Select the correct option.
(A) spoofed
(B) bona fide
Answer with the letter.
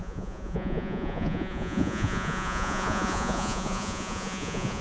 A